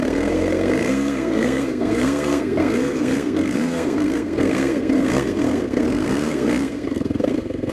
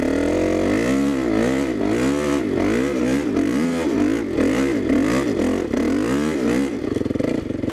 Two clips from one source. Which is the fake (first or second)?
first